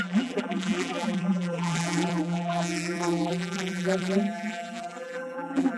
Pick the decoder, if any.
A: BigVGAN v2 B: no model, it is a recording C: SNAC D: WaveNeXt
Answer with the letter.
A